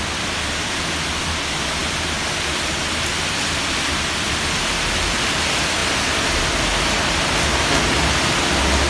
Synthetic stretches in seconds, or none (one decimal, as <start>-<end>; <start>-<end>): none